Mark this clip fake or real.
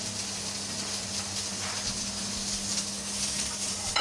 real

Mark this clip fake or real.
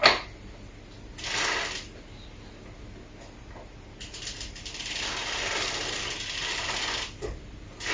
real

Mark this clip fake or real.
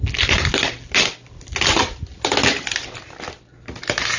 real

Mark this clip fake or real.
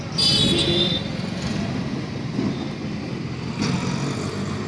real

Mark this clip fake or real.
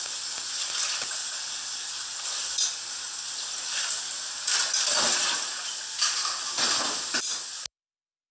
real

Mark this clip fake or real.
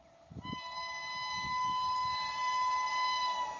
real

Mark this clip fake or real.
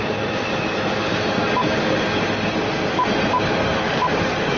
real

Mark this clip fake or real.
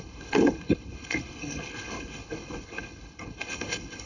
fake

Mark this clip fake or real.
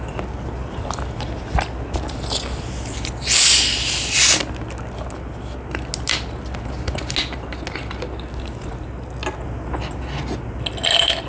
real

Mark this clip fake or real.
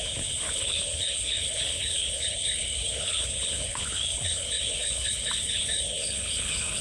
fake